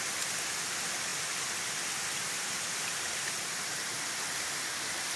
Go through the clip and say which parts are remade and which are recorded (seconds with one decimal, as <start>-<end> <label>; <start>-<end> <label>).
0.0-2.1 recorded; 2.1-4.0 remade; 4.0-5.2 recorded